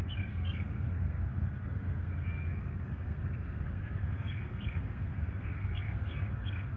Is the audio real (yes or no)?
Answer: no